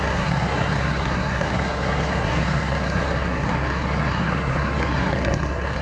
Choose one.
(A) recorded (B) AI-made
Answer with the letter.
B